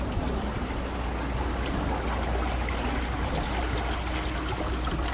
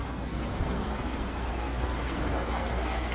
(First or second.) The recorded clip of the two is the first